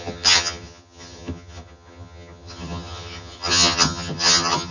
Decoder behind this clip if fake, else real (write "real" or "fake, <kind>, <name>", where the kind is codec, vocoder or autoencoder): fake, vocoder, HiFi-GAN